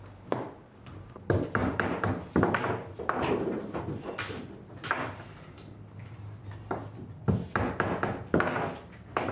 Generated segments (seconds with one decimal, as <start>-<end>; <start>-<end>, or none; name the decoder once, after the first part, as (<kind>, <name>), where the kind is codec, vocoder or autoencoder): 1.6-3.8 (vocoder, BigVGAN v2)